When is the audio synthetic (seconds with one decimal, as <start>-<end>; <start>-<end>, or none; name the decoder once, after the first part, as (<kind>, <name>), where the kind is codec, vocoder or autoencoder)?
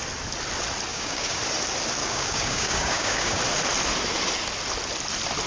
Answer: 0.9-1.4 (codec, DAC); 2.0-3.4